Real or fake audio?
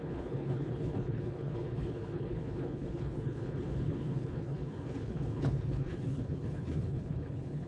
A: fake